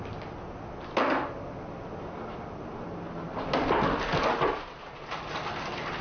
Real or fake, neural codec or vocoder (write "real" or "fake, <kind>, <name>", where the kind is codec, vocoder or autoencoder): real